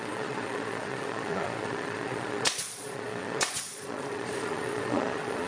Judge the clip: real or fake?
fake